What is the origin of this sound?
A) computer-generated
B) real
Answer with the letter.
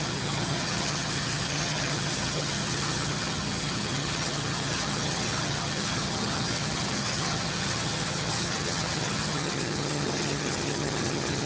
A